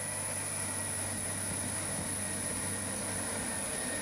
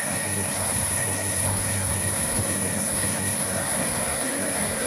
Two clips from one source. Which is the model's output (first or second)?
second